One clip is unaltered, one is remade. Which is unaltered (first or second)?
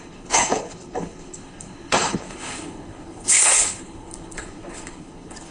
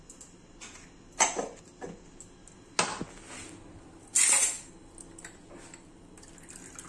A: second